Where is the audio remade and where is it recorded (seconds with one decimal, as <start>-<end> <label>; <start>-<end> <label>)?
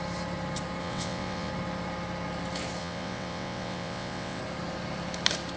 0.0-0.8 recorded; 0.8-1.5 remade; 1.5-2.8 recorded; 2.8-4.4 remade; 4.4-5.6 recorded